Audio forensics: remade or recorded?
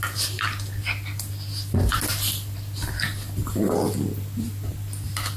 recorded